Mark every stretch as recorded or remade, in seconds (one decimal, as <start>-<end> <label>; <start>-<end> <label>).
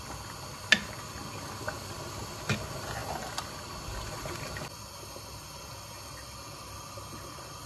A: 0.0-7.7 recorded